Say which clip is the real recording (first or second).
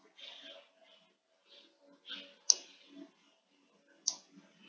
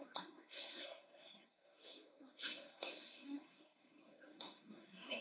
first